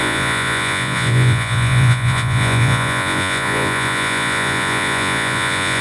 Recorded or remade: remade